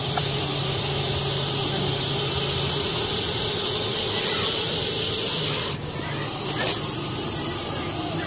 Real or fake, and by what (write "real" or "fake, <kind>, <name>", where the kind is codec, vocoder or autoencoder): real